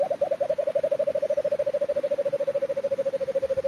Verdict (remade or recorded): recorded